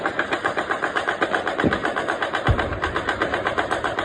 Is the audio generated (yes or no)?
yes